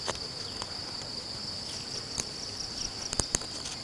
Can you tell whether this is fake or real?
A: real